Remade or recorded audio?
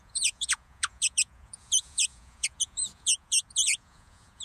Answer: remade